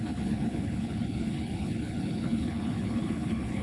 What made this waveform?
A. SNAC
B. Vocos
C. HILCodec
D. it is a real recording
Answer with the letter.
C